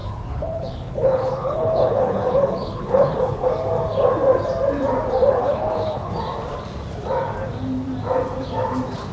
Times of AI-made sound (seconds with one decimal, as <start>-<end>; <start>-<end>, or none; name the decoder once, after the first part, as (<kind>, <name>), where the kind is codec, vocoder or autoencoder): 0.0-3.5 (codec, HILCodec); 5.4-6.1